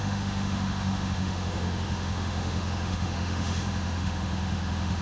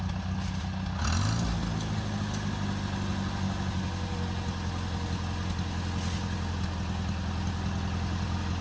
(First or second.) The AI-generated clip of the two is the first